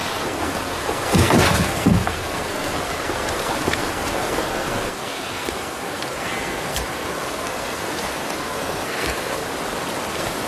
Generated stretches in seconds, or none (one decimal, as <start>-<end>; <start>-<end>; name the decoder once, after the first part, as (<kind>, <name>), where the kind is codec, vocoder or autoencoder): 0.0-9.4 (codec, SNAC); 10.1-10.5